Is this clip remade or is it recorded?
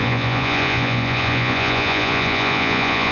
remade